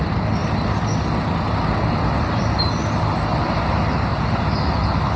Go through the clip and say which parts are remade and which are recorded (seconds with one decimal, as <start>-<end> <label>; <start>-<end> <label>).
0.0-5.2 recorded